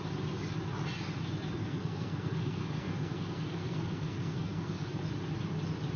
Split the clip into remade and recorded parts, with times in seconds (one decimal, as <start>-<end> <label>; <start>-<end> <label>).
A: 0.0-1.6 recorded; 1.6-5.0 remade; 5.0-6.0 recorded

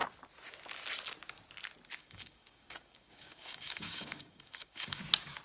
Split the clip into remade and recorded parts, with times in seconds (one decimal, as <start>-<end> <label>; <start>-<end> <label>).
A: 0.0-2.0 recorded; 2.0-5.0 remade; 5.0-5.4 recorded

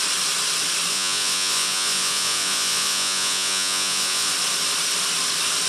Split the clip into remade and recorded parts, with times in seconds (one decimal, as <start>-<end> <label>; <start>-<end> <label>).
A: 0.0-0.9 recorded; 0.9-4.3 remade; 4.3-5.7 recorded

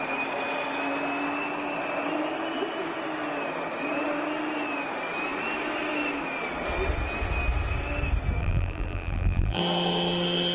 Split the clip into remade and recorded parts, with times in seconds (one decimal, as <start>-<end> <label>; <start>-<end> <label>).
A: 0.0-8.4 recorded; 8.4-9.6 remade; 9.6-10.5 recorded

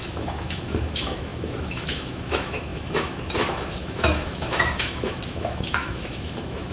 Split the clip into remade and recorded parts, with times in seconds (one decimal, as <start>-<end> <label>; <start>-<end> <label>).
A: 0.0-6.7 remade

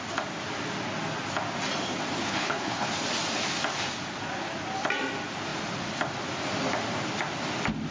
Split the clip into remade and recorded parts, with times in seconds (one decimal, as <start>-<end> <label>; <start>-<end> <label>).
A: 0.0-2.2 recorded; 2.2-2.9 remade; 2.9-7.9 recorded